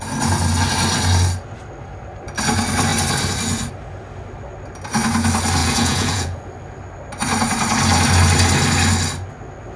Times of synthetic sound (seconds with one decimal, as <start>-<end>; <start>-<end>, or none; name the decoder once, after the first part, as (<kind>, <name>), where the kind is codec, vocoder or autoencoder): 5.6-6.4 (vocoder, Vocos)